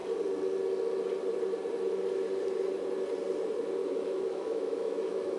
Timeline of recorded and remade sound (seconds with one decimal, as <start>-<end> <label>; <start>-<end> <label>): 0.0-3.8 recorded; 3.8-5.4 remade